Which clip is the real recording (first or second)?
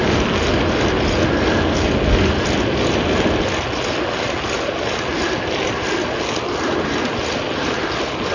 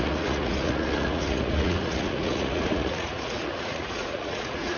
first